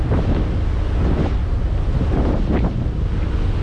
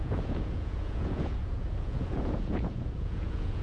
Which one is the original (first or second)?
first